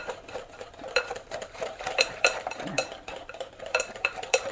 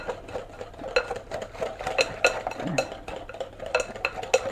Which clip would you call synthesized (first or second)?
first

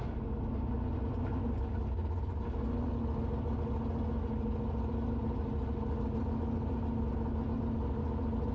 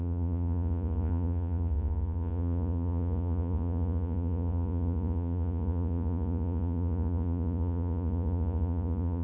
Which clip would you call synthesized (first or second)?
second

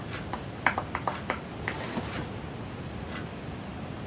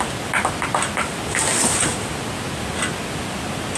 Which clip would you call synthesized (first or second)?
first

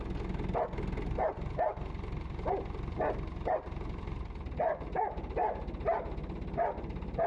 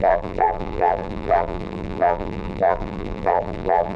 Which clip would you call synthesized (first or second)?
second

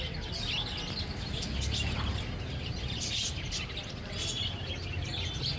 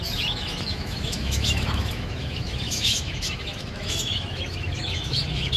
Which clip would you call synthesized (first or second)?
second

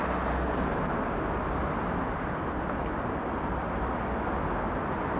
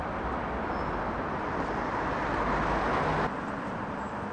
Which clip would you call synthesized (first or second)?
second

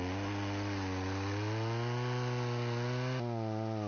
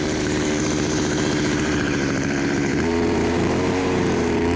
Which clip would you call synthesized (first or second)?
second